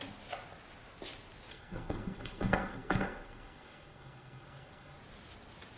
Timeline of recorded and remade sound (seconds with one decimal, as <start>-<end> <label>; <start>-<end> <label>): 0.0-1.5 recorded; 1.5-5.0 remade; 5.0-5.8 recorded